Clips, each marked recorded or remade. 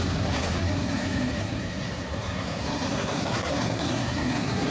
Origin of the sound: remade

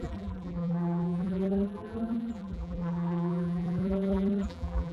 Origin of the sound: remade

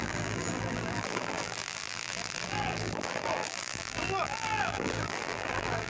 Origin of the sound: remade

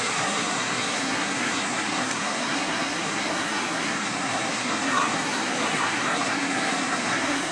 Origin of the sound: remade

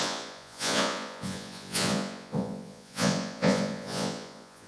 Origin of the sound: remade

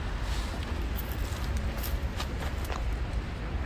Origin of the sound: recorded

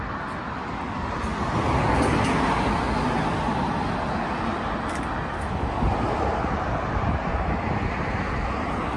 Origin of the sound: recorded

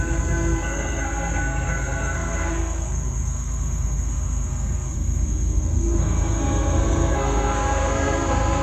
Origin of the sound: remade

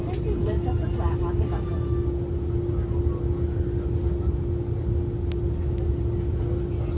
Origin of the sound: recorded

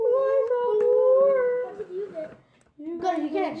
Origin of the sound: recorded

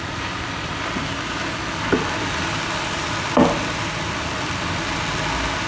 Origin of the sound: recorded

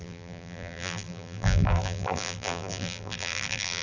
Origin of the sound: remade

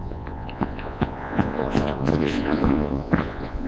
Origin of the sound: remade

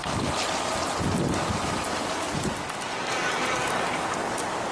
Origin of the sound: recorded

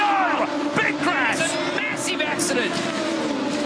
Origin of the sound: recorded